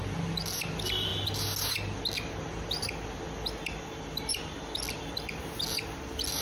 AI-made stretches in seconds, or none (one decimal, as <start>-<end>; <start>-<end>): none